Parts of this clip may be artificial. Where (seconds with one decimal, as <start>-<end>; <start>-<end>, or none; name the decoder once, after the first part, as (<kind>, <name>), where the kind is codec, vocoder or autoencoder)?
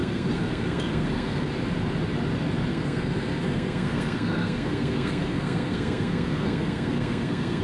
0.0-1.5 (codec, SNAC); 2.7-7.6